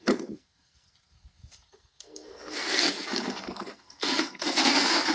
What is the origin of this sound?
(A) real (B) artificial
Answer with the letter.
B